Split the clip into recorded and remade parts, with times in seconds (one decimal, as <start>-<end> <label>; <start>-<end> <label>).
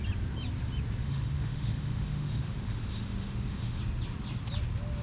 0.0-1.0 recorded; 1.0-3.8 remade; 3.8-5.0 recorded